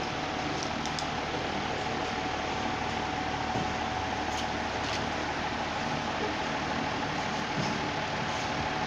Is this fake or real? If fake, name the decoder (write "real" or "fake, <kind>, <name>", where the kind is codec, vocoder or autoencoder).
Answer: real